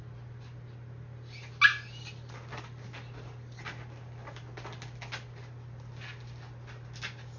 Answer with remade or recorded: recorded